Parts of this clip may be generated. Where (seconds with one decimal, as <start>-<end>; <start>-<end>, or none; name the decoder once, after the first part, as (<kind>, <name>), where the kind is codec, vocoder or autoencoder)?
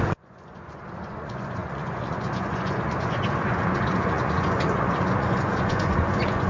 0.0-6.5 (vocoder, Vocos)